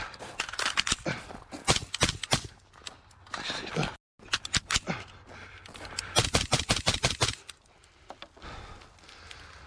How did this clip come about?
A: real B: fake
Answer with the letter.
A